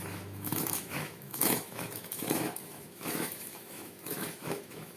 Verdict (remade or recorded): remade